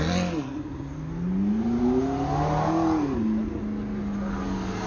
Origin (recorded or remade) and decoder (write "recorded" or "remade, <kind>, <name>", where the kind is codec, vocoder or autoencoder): recorded